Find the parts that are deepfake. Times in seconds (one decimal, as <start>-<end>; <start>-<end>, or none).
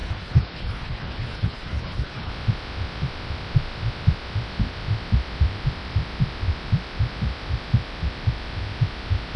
0.0-2.3